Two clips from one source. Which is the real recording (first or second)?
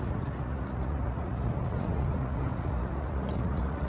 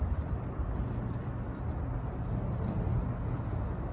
second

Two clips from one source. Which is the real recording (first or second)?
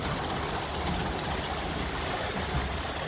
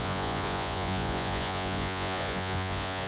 first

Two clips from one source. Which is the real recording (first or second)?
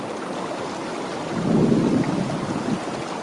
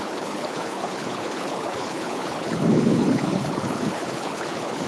first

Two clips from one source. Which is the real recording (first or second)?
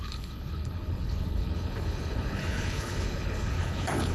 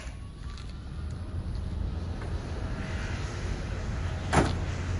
second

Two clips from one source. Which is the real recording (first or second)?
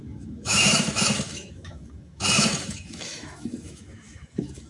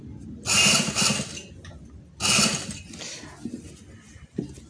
second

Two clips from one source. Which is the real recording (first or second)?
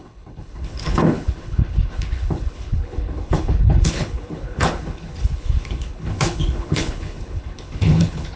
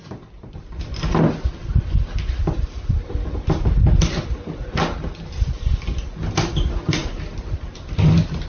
second